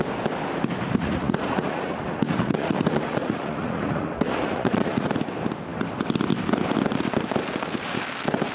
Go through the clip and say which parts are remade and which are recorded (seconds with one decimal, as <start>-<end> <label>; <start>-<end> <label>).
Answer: 0.0-1.0 recorded; 1.0-5.1 remade; 5.1-8.5 recorded